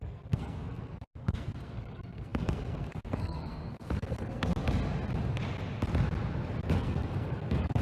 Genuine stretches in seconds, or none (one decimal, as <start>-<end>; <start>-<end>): 4.5-6.7